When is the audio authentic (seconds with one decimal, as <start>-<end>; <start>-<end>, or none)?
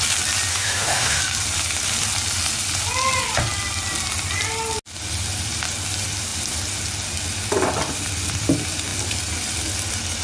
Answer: 0.0-0.5; 1.2-10.2